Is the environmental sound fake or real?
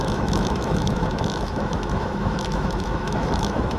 fake